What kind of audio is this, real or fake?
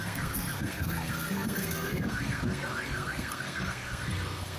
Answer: fake